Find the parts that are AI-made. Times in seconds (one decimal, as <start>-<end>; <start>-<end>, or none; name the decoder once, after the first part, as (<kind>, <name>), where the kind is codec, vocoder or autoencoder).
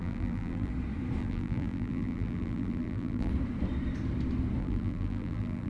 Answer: 0.0-0.7 (vocoder, BigVGAN v2); 1.2-3.3; 4.6-5.7